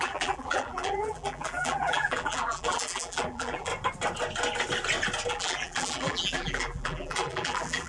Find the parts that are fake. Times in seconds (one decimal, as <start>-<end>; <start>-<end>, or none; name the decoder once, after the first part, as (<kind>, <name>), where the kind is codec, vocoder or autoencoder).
0.0-3.7 (vocoder, BigVGAN v2); 5.3-7.9